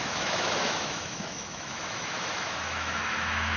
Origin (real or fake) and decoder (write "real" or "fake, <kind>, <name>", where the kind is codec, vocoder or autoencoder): fake, autoencoder, DAC-VAE